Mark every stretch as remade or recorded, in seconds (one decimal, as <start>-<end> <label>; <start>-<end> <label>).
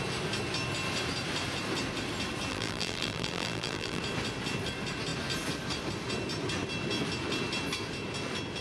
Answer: 0.0-2.5 recorded; 2.5-4.0 remade; 4.0-8.6 recorded